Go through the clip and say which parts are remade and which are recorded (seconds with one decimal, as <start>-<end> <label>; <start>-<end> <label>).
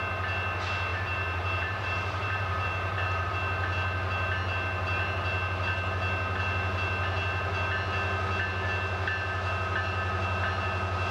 0.0-0.9 recorded; 0.9-3.3 remade; 3.3-11.1 recorded